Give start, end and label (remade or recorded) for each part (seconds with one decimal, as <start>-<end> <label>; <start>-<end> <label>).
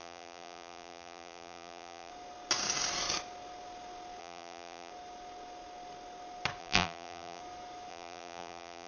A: 0.0-2.1 remade; 2.1-4.2 recorded; 4.2-4.9 remade; 4.9-6.6 recorded; 6.6-7.4 remade; 7.4-7.9 recorded; 7.9-8.9 remade